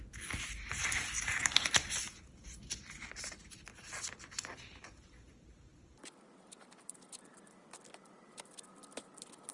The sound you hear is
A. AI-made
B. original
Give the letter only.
B